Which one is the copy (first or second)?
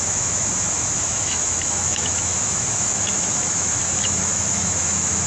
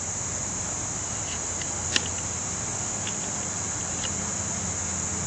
first